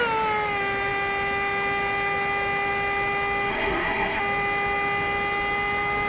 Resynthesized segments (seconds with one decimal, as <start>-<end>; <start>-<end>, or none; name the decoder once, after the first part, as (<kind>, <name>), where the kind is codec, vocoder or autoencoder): 3.5-4.2 (codec, SNAC)